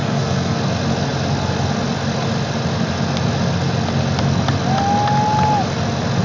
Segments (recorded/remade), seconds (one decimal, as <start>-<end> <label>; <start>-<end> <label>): 0.0-0.6 remade; 0.6-6.2 recorded